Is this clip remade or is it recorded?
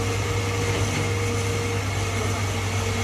recorded